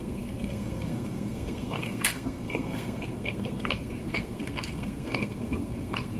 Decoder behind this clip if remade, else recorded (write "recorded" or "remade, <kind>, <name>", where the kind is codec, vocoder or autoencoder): remade, codec, SNAC